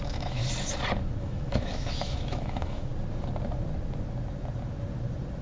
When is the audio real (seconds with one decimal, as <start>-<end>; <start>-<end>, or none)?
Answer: 0.4-1.2; 2.9-5.4